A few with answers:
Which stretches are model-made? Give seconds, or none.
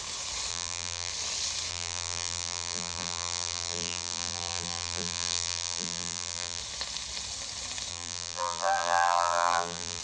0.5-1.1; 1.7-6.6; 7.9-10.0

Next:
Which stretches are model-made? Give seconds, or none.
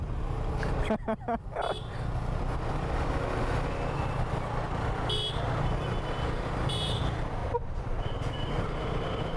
none